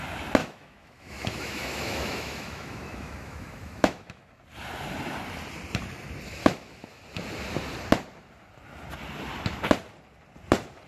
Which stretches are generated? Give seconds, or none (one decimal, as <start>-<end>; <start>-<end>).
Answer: 0.4-4.3; 6.4-7.0